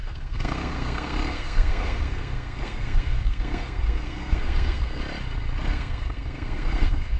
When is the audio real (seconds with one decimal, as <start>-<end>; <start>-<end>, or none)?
5.0-5.6